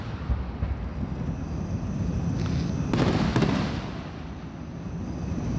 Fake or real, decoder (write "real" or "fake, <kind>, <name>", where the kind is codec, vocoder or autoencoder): real